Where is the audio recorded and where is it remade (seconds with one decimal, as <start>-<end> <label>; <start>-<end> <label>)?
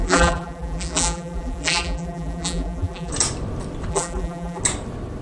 0.0-3.1 remade; 3.1-3.9 recorded; 3.9-4.6 remade; 4.6-5.2 recorded